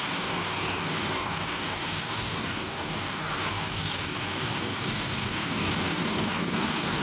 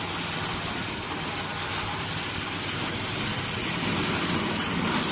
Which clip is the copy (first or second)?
first